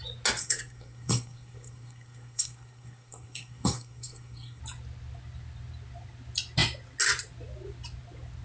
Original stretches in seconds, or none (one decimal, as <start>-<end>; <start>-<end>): 0.0-0.4; 4.6-8.4